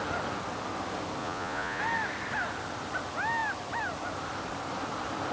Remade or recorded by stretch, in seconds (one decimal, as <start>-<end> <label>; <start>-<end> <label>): 0.0-1.2 recorded; 1.2-1.8 remade; 1.8-5.3 recorded